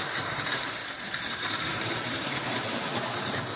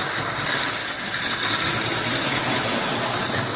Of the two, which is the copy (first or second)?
first